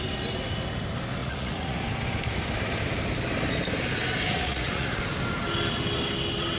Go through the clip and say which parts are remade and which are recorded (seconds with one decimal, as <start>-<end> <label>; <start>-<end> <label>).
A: 0.0-1.2 recorded; 1.2-1.8 remade; 1.8-4.3 recorded; 4.3-5.0 remade; 5.0-6.6 recorded